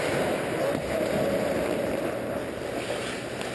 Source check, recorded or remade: recorded